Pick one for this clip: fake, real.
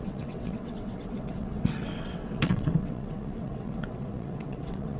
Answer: fake